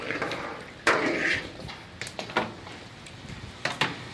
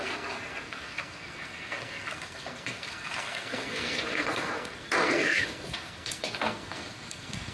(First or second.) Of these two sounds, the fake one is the second